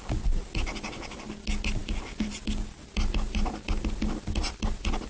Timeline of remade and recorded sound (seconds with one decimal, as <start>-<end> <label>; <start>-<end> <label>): 0.0-5.1 recorded